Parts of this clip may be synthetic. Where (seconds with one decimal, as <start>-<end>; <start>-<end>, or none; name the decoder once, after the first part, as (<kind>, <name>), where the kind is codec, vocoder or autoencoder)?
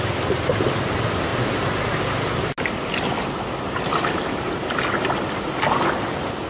none